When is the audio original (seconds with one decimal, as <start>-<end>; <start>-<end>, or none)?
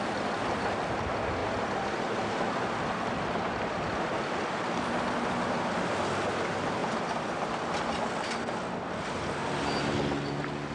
0.0-10.7